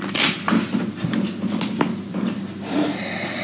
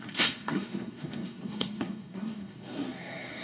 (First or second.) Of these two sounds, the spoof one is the second